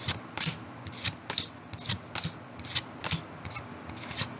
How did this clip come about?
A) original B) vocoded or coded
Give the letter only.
A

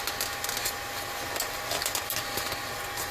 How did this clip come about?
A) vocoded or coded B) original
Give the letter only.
B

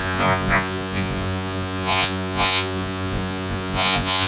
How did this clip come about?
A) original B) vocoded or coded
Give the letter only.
B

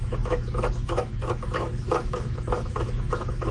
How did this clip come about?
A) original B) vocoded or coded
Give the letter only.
B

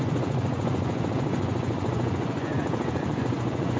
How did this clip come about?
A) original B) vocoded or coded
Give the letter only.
B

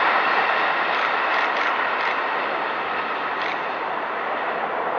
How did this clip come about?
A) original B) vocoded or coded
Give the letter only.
A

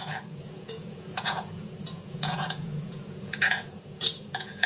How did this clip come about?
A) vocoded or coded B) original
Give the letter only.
A